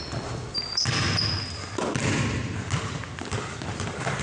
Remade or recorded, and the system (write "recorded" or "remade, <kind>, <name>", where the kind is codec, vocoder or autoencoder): recorded